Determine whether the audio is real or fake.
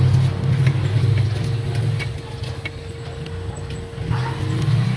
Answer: real